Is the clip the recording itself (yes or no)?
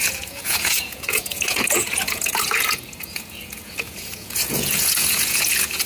no